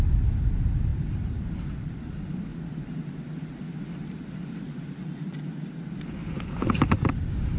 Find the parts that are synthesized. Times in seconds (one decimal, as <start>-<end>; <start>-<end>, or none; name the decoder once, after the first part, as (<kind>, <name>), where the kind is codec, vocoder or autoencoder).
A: none